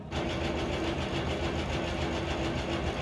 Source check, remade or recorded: recorded